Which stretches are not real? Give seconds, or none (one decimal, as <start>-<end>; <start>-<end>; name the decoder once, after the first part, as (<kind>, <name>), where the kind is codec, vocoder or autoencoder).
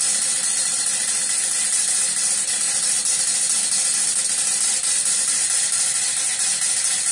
none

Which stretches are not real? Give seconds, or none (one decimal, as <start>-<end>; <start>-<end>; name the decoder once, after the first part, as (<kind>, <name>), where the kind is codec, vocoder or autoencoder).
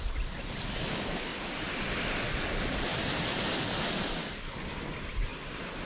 4.2-4.7 (codec, DAC)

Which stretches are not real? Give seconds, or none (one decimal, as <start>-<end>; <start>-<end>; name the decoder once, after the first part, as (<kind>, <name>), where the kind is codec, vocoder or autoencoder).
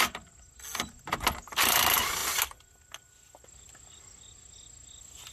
none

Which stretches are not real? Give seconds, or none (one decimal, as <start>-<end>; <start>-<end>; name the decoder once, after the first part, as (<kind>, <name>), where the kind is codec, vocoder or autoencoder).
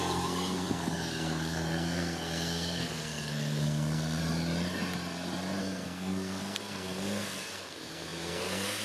0.0-4.2 (codec, SNAC); 5.6-8.8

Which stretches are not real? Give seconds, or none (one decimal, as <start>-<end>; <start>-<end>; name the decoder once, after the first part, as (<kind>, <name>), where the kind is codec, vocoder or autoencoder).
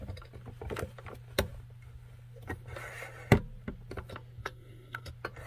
4.4-5.1 (codec, SNAC)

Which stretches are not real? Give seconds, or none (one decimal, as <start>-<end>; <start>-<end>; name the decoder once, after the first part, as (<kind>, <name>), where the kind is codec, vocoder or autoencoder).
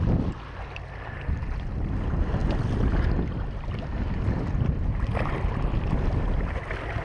none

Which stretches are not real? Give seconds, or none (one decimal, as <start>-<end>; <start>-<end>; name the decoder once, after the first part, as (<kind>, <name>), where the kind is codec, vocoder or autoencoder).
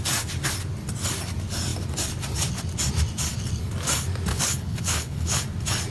4.3-5.4 (codec, HILCodec)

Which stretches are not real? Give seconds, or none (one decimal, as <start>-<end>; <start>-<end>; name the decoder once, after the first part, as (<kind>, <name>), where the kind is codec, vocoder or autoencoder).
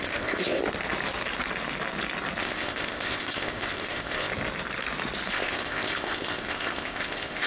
0.0-0.6 (codec, ZipCodec); 2.4-4.3; 5.3-7.5